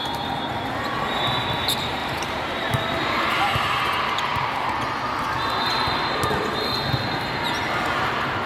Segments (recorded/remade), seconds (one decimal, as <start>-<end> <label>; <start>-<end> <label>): 0.0-2.0 recorded; 2.0-2.8 remade; 2.8-8.5 recorded